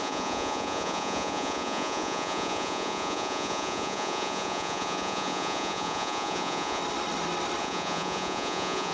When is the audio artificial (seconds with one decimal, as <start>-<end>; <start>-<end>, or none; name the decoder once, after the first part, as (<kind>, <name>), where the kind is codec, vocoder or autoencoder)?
0.0-6.8 (vocoder, Vocos); 7.6-8.9